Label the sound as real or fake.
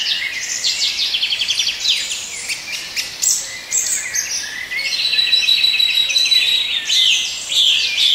real